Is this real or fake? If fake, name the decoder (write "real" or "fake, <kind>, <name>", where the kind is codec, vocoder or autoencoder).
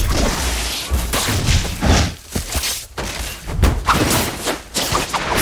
real